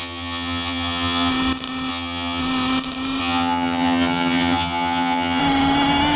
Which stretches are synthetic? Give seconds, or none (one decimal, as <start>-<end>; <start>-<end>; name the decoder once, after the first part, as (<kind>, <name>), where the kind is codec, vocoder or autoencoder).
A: 0.0-1.3 (vocoder, HiFi-GAN); 1.9-2.4; 3.2-5.4